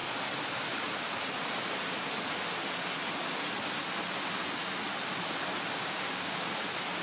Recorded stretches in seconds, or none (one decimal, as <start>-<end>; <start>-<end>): 0.0-5.8; 6.4-7.0